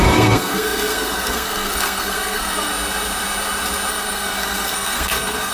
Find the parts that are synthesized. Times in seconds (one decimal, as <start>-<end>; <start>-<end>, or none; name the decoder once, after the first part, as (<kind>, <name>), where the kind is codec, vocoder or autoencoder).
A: 0.0-2.7 (codec, SNAC); 3.9-5.5